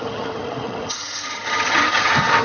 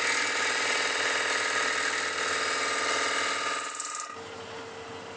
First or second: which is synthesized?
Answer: first